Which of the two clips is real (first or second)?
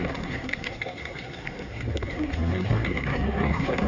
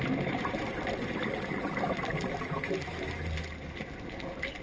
second